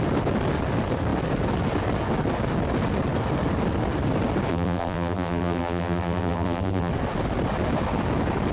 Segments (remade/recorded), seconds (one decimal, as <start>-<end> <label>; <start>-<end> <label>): 0.0-4.5 recorded; 4.5-6.9 remade; 6.9-8.5 recorded